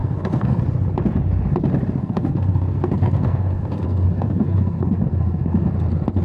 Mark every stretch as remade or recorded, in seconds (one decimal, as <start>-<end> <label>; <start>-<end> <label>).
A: 0.0-0.6 remade; 0.6-2.0 recorded; 2.0-5.7 remade; 5.7-6.2 recorded